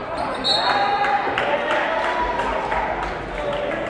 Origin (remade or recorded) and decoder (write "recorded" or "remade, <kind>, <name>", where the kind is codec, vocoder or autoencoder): recorded